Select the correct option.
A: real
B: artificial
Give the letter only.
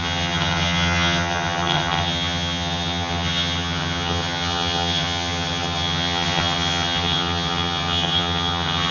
B